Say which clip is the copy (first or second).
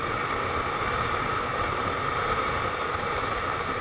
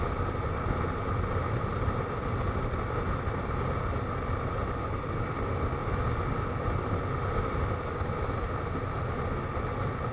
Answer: first